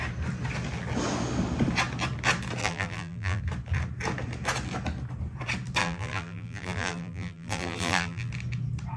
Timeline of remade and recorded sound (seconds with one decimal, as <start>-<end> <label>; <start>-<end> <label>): 0.0-2.6 recorded; 2.6-3.4 remade; 3.4-5.8 recorded; 5.8-8.3 remade; 8.3-9.0 recorded

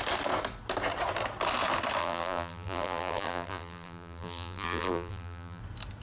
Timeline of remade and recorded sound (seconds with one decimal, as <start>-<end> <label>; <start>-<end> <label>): 0.0-2.0 recorded; 2.0-5.6 remade; 5.6-6.0 recorded

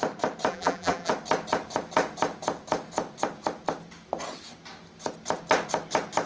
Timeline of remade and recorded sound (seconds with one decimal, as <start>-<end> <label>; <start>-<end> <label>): 0.0-0.5 recorded; 0.5-1.1 remade; 1.1-6.3 recorded

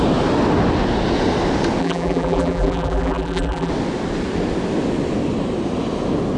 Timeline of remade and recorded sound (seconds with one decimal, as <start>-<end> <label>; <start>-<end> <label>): 0.0-1.8 recorded; 1.8-3.7 remade; 3.7-6.4 recorded

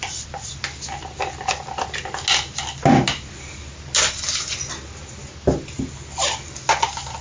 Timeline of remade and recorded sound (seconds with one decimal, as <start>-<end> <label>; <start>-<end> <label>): 0.0-7.2 recorded

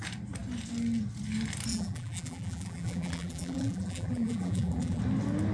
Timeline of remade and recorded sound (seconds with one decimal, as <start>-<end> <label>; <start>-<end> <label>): 0.0-1.7 recorded; 1.7-5.0 remade; 5.0-5.5 recorded

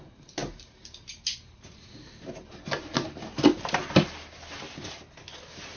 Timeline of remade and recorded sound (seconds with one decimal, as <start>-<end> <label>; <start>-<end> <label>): 0.0-0.4 recorded; 0.4-3.8 remade; 3.8-5.8 recorded

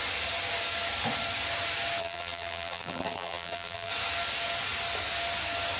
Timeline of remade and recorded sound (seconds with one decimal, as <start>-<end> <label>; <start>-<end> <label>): 0.0-2.0 recorded; 2.0-3.9 remade; 3.9-5.8 recorded